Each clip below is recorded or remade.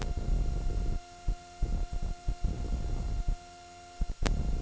recorded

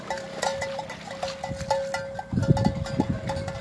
recorded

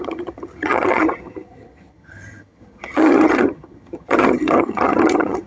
remade